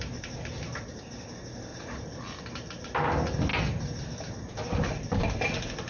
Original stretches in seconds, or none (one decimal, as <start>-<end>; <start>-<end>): 0.0-1.7; 2.2-5.9